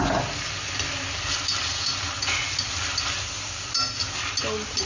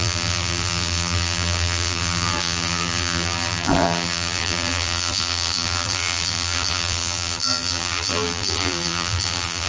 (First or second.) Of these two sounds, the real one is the first